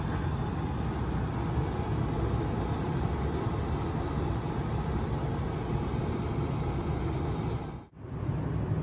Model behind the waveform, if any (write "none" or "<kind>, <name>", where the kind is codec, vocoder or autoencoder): none